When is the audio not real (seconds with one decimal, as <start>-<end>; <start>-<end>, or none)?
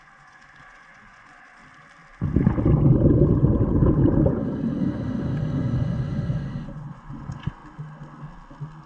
0.0-1.6; 5.5-7.6